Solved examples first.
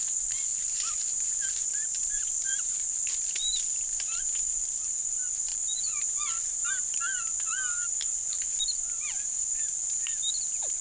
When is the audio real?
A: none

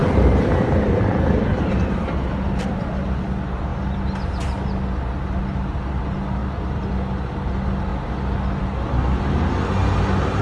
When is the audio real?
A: 2.0-6.4; 6.9-10.4